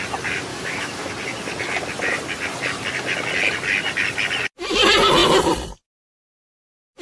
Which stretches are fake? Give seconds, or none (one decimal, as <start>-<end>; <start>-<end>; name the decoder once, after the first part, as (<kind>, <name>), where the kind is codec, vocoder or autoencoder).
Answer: 0.5-1.1 (autoencoder, DAC-VAE)